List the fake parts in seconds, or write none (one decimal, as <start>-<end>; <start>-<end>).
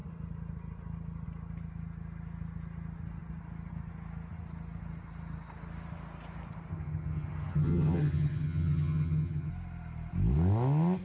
6.7-9.5